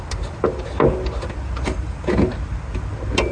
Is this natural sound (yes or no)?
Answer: yes